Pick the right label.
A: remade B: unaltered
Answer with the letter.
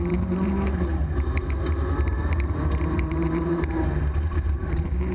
A